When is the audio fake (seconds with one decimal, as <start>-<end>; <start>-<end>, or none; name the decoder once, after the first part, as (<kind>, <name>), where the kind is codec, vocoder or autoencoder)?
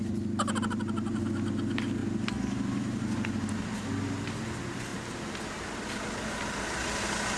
none